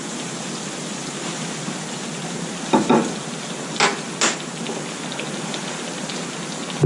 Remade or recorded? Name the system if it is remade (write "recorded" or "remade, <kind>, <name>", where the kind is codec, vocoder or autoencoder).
recorded